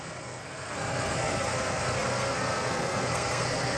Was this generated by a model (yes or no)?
yes